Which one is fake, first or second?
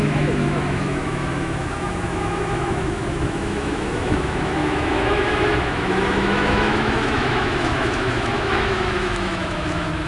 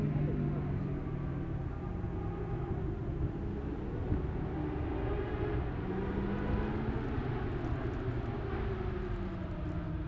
first